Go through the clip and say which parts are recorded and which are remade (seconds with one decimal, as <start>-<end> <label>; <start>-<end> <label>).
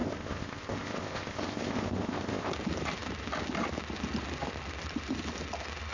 0.0-2.5 remade; 2.5-5.9 recorded